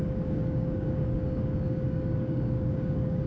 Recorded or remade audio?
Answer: remade